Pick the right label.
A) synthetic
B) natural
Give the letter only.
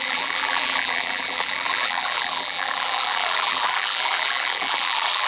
A